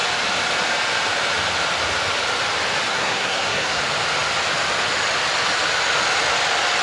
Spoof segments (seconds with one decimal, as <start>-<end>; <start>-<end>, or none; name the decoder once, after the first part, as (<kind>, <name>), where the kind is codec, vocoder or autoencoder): 2.9-3.8 (codec, SNAC)